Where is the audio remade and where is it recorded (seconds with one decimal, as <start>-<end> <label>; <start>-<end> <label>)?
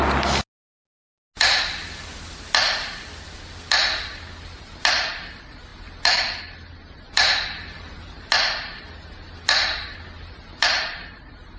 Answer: 0.0-11.6 recorded